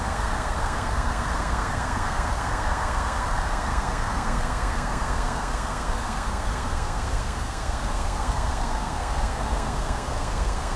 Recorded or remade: remade